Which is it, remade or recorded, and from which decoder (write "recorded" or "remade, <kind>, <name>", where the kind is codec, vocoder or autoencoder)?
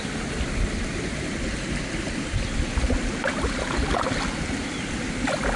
recorded